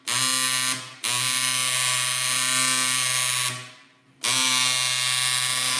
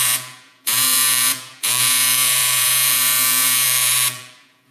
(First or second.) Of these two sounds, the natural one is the first